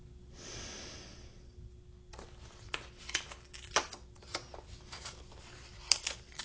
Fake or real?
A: real